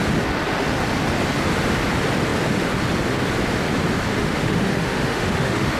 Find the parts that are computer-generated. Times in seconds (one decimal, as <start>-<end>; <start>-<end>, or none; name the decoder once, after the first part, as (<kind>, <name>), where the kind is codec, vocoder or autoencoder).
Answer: 4.2-5.8 (autoencoder, DAC-VAE)